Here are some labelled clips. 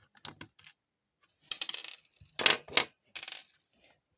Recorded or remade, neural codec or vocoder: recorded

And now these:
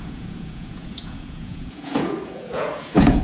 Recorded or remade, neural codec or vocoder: remade, vocoder, Vocos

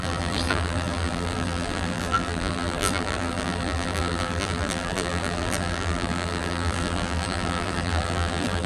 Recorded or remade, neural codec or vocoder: remade, vocoder, BigVGAN v2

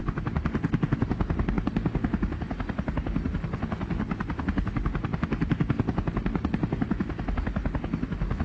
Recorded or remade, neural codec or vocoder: recorded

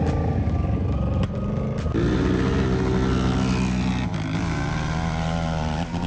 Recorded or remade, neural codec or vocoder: recorded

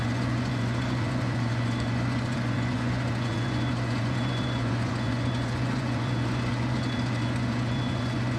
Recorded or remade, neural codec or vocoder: remade, vocoder, Vocos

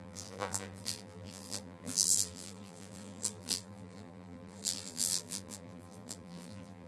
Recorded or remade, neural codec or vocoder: remade, vocoder, BigVGAN v2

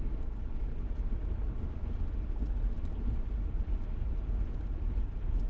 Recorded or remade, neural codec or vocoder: recorded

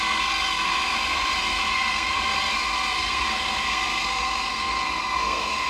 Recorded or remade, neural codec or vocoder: remade, codec, SNAC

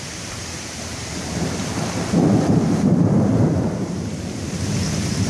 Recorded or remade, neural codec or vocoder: remade, vocoder, BigVGAN v2